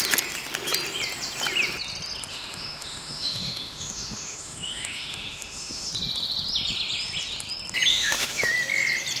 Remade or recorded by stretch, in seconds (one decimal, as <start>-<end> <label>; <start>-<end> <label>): 0.0-2.3 recorded; 2.3-5.9 remade; 5.9-7.9 recorded; 7.9-8.5 remade; 8.5-9.2 recorded